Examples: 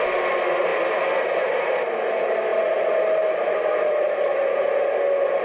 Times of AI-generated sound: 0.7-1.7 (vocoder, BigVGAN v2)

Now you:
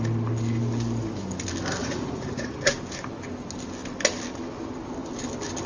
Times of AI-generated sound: 1.8-2.7 (vocoder, Vocos)

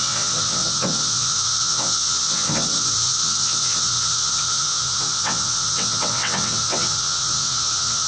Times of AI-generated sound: 0.0-8.1 (vocoder, WaveNeXt)